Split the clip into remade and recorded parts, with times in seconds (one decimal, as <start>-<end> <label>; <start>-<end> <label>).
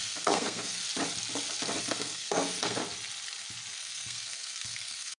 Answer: 0.0-0.8 remade; 0.8-1.8 recorded; 1.8-2.8 remade; 2.8-3.7 recorded; 3.7-5.2 remade